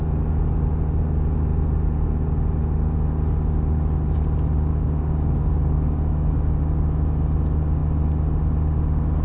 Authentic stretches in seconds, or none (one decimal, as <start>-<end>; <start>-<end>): 0.0-4.7; 6.6-9.2